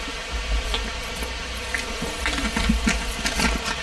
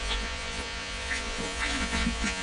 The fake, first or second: second